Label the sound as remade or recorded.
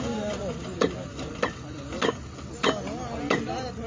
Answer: recorded